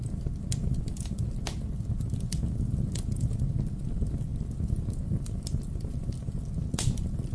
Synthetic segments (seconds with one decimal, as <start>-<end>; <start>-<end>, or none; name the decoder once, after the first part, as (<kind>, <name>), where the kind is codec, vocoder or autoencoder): none